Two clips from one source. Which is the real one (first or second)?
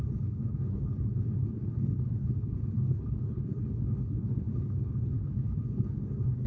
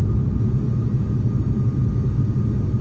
second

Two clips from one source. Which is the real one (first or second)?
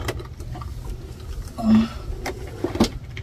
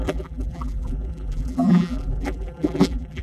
first